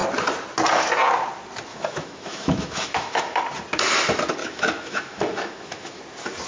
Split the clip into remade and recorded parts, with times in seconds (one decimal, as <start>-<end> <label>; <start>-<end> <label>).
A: 0.0-1.7 recorded; 1.7-3.4 remade; 3.4-4.4 recorded; 4.4-6.0 remade; 6.0-6.5 recorded